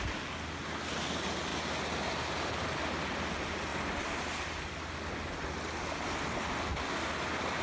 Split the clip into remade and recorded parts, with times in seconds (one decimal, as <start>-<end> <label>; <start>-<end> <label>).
0.0-7.6 recorded